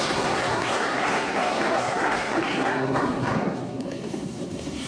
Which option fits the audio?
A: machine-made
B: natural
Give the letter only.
A